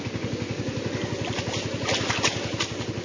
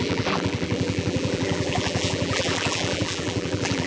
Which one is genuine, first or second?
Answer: first